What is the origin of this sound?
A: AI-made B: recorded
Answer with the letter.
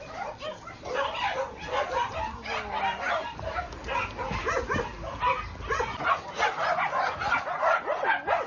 B